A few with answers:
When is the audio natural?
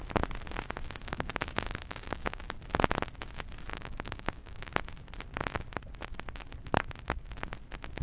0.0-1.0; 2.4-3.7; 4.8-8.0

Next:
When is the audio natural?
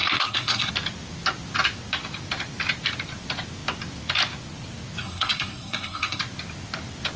0.7-5.0; 6.2-7.2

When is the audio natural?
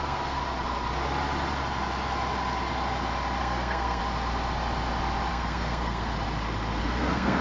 0.4-3.4; 4.0-5.3; 6.1-6.8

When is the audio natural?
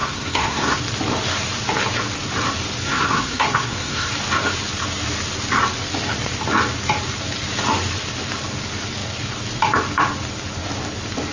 0.8-2.8; 4.1-11.3